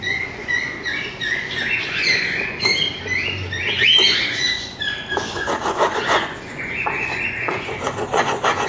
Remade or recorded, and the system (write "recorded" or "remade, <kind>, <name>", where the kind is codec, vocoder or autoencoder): remade, vocoder, Vocos